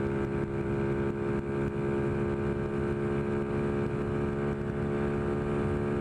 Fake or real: real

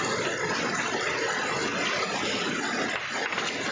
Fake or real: real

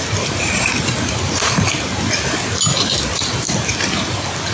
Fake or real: real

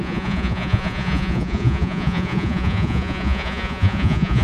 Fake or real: fake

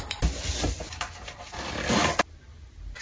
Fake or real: real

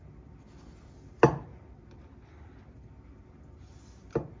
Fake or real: real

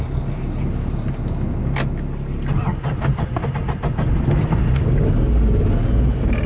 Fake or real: real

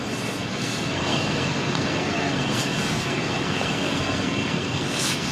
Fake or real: fake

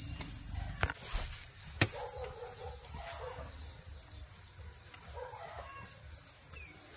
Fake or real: real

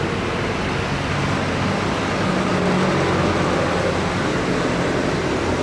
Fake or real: real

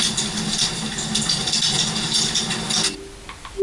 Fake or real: real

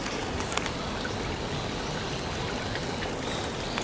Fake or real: real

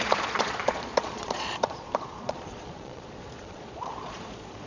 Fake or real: fake